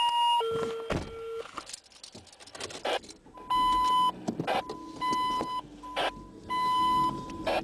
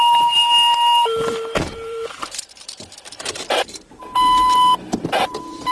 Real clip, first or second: first